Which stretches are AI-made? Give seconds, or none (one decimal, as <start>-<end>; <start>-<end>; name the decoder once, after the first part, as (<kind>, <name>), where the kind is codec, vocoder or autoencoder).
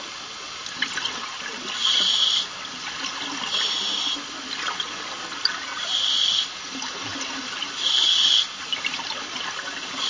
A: none